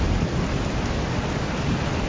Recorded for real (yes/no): yes